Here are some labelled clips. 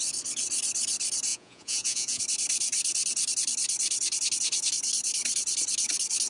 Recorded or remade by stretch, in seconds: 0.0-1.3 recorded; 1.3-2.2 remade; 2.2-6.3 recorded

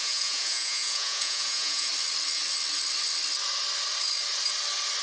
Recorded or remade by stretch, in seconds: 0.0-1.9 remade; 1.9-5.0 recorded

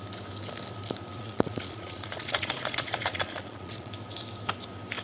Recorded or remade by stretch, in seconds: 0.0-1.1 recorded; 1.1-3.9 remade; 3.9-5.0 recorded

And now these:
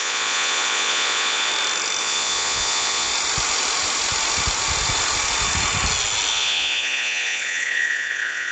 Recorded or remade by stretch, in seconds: 0.0-1.5 remade; 1.5-2.0 recorded; 2.0-3.1 remade; 3.1-6.3 recorded; 6.3-8.5 remade

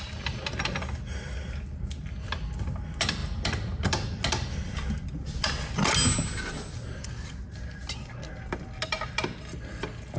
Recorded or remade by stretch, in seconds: 0.0-10.2 recorded

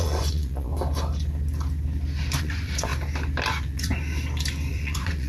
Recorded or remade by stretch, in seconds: 0.0-0.7 remade; 0.7-2.4 recorded; 2.4-2.9 remade; 2.9-3.5 recorded; 3.5-3.9 remade; 3.9-4.7 recorded; 4.7-5.3 remade

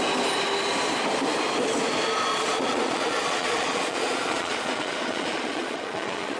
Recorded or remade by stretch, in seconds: 0.0-2.3 recorded; 2.3-6.4 remade